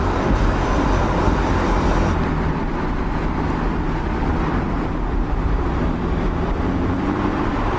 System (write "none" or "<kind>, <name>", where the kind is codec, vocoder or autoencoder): vocoder, BigVGAN v2